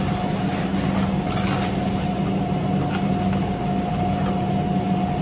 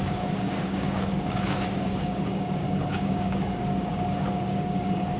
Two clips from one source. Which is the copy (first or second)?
second